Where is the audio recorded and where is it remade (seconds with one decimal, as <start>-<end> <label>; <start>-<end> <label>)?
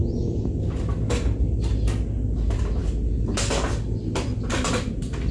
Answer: 0.0-5.3 recorded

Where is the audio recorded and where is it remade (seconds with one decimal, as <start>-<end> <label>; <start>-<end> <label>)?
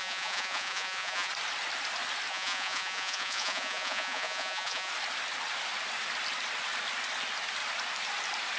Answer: 0.0-1.3 remade; 1.3-2.3 recorded; 2.3-4.9 remade; 4.9-8.6 recorded